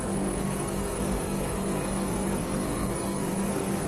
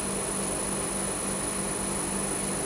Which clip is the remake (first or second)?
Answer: first